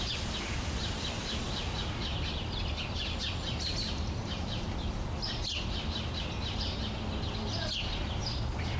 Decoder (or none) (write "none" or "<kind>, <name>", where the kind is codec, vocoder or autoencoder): vocoder, BigVGAN v2